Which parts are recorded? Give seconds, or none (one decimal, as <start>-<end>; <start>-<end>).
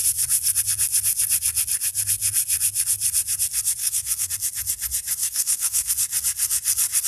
0.0-3.8; 4.3-5.2; 5.9-7.1